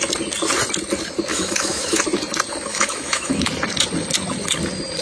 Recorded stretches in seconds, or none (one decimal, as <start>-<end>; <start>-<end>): 0.0-1.3; 2.0-2.7; 3.5-5.0